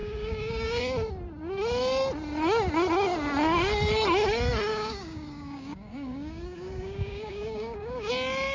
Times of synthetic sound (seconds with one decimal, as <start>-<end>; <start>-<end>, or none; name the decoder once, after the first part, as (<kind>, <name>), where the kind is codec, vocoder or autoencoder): 0.0-0.8 (codec, DAC); 4.7-8.1